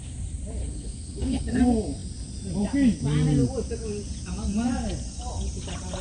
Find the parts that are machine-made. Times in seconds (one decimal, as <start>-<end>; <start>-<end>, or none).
0.6-1.6

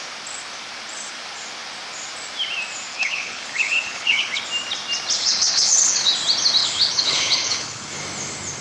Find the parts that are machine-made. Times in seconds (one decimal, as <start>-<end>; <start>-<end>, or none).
2.9-4.4; 5.2-6.1; 6.6-8.0

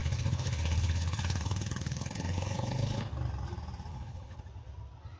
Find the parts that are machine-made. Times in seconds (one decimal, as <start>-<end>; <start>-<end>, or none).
0.0-3.1; 3.9-4.4

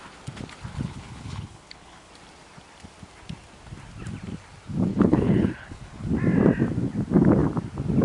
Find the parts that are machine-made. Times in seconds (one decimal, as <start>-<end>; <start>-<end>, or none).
0.7-2.1; 4.9-6.1

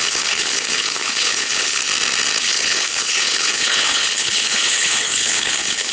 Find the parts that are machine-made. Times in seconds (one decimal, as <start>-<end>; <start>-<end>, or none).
0.0-1.8; 2.4-5.9